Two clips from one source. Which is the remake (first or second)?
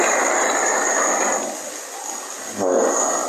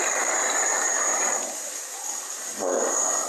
second